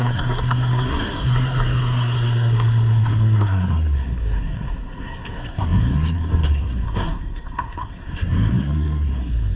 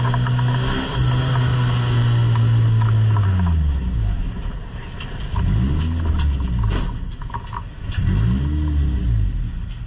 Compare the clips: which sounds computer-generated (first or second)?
first